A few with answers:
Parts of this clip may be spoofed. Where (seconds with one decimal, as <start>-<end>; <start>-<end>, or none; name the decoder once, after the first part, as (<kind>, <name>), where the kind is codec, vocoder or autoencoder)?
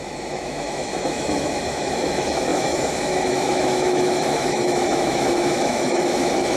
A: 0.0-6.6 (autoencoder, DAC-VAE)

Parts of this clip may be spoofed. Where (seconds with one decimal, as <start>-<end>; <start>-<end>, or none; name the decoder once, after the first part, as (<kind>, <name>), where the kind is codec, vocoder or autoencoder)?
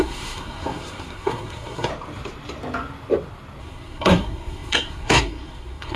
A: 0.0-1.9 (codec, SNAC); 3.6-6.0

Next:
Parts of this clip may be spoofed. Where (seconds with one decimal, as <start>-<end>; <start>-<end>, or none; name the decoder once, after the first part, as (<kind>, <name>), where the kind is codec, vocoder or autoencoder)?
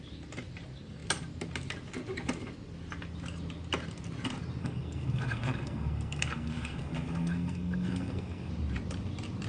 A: 4.6-8.5 (codec, SNAC)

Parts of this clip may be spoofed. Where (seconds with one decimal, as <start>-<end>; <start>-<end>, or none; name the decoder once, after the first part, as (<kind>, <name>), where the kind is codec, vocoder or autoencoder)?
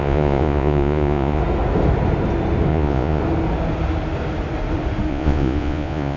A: 0.0-1.4 (vocoder, Vocos); 2.7-3.2; 5.1-6.2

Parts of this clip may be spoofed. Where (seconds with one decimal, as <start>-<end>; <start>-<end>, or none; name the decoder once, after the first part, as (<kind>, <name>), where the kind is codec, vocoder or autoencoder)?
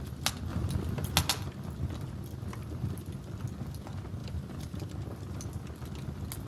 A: 4.2-4.9 (vocoder, BigVGAN v2)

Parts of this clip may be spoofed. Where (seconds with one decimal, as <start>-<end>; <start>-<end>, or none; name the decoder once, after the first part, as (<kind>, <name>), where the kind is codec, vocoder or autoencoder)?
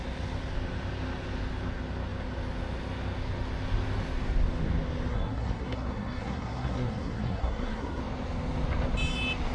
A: 5.1-8.0 (codec, SNAC)